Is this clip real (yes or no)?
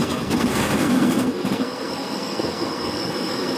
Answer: no